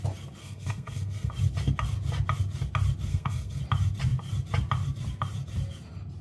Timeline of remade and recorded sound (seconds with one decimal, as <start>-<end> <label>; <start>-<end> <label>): 0.0-0.4 recorded; 0.4-1.3 remade; 1.3-3.1 recorded; 3.1-3.6 remade; 3.6-6.2 recorded